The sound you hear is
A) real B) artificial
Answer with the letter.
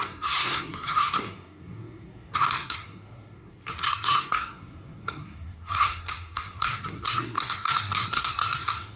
B